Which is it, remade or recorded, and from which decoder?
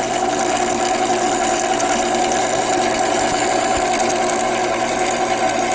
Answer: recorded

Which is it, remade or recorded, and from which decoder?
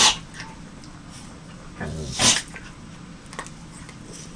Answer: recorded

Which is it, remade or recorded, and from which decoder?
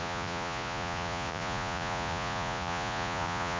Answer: remade, vocoder, Vocos